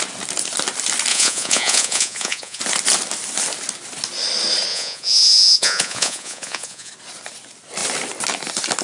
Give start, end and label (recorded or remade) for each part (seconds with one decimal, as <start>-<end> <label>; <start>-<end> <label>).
0.0-1.1 recorded; 1.1-2.6 remade; 2.6-4.7 recorded; 4.7-6.9 remade; 6.9-8.8 recorded